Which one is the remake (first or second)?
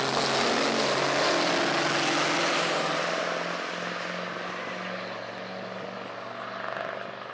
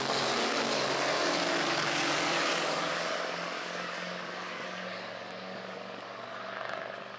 second